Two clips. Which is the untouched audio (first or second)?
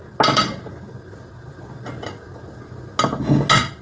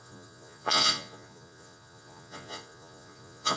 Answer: first